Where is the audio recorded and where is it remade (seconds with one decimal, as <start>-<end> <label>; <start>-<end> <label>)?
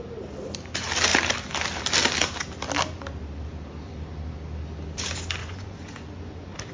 0.0-5.4 recorded; 5.4-6.1 remade; 6.1-6.7 recorded